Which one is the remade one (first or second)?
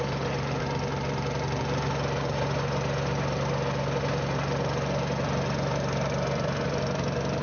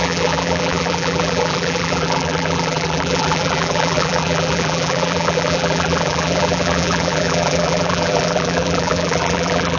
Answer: second